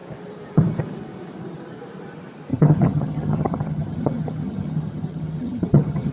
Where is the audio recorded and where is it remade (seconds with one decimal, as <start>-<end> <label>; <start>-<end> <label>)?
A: 0.0-2.5 recorded; 2.5-6.1 remade